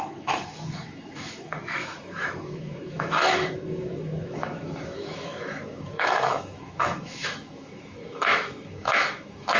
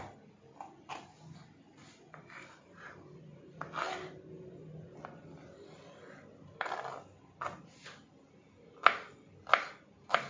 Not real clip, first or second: first